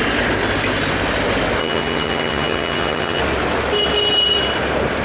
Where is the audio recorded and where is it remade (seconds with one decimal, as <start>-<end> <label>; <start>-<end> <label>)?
0.0-1.6 recorded; 1.6-3.2 remade; 3.2-5.0 recorded